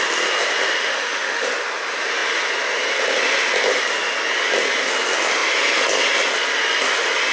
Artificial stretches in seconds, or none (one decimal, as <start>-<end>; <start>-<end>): 0.8-1.5